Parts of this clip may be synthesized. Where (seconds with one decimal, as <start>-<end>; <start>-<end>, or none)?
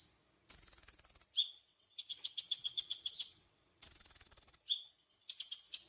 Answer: 1.4-4.9